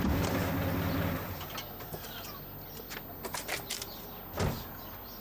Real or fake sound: real